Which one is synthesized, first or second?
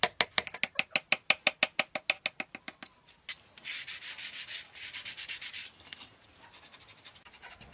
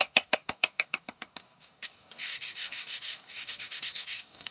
second